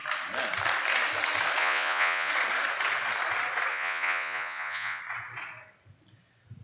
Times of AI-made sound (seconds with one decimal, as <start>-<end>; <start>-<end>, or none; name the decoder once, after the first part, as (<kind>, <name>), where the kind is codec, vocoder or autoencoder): 1.6-2.3 (vocoder, Vocos); 3.7-5.0